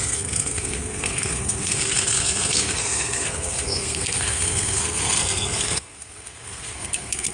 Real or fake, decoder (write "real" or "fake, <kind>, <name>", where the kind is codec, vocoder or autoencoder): fake, codec, SNAC